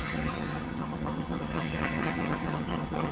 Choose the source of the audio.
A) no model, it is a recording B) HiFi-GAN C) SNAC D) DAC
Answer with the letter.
B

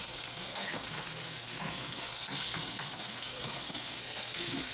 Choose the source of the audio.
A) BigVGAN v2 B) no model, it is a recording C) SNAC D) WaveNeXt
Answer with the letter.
C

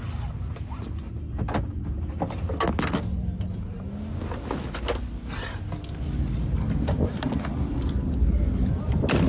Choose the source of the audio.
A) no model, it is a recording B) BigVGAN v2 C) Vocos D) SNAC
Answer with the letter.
A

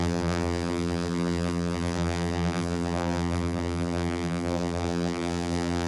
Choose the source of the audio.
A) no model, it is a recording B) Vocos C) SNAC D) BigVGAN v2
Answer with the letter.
D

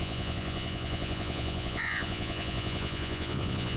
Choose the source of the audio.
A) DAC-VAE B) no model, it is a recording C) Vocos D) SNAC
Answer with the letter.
C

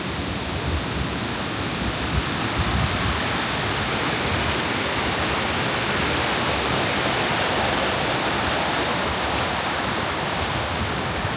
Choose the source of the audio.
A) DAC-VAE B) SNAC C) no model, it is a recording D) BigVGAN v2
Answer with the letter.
C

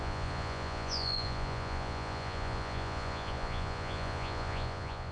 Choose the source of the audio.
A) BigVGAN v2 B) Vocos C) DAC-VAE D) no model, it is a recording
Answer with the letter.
B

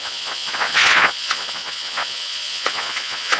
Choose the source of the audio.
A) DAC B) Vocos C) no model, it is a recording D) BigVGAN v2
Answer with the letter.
B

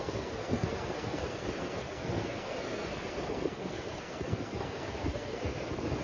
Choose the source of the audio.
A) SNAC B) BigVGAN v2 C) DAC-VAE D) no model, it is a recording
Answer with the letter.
A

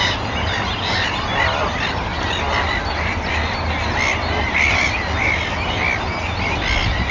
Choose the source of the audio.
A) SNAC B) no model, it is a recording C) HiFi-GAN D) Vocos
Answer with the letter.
B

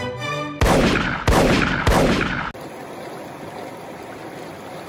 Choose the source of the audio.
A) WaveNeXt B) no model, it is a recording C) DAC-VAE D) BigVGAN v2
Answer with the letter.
B